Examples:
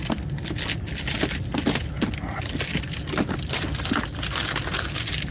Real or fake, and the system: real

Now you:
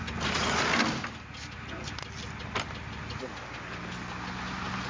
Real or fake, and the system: real